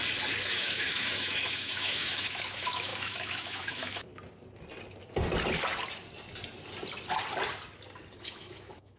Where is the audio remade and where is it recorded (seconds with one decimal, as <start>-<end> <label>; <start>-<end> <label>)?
0.0-0.5 recorded; 0.5-4.1 remade; 4.1-8.2 recorded; 8.2-9.0 remade